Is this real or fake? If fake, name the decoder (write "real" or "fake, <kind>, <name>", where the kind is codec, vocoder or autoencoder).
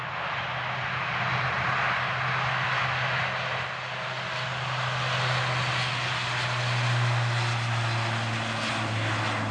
real